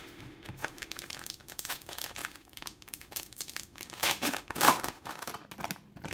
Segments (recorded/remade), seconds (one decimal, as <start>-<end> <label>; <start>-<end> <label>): 0.0-5.3 remade; 5.3-6.1 recorded